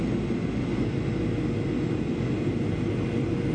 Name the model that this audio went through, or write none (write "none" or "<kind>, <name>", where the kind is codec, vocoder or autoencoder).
none